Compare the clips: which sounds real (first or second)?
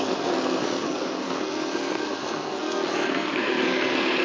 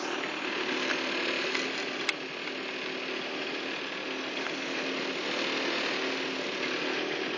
second